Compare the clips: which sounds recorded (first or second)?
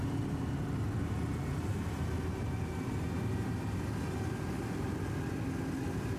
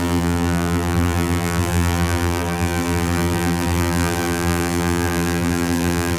first